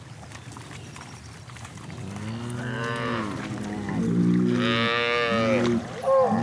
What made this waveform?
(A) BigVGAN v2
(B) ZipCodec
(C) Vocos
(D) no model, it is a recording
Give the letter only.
D